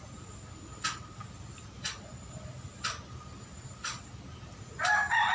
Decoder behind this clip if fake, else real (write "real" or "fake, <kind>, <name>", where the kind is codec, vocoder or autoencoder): real